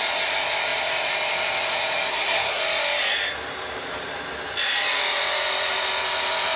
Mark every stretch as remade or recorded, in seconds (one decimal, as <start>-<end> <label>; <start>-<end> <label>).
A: 0.0-2.1 recorded; 2.1-2.6 remade; 2.6-6.6 recorded